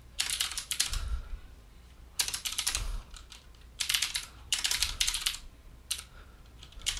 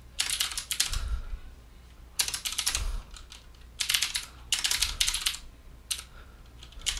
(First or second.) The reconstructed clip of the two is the first